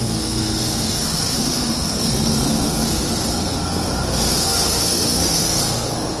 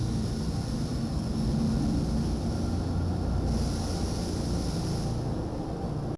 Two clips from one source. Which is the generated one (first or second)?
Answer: first